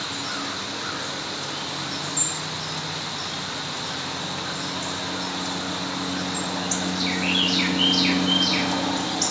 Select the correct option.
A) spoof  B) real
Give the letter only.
B